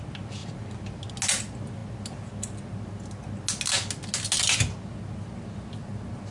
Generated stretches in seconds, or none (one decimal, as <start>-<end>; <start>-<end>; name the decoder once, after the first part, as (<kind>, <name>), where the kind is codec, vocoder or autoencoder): none